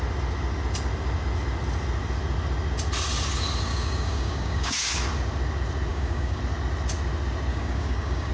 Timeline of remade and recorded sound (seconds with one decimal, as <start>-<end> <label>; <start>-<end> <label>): 0.0-3.7 recorded; 3.7-4.9 remade; 4.9-5.9 recorded; 5.9-6.4 remade; 6.4-7.5 recorded; 7.5-8.3 remade